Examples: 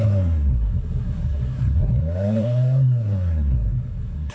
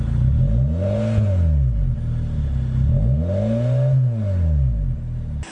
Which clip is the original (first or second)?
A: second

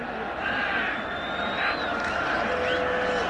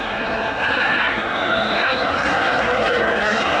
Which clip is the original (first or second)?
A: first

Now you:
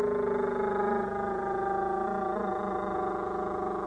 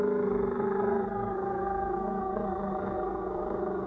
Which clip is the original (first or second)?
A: first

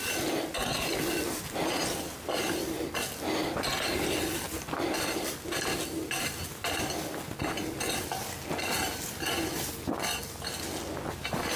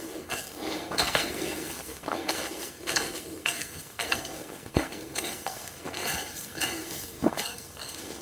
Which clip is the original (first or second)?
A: first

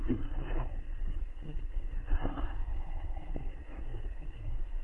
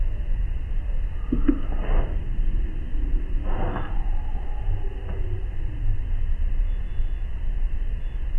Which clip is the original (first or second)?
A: second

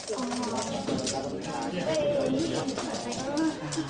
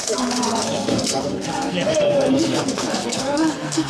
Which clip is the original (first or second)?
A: first